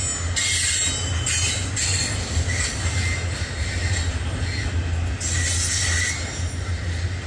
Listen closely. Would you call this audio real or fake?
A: real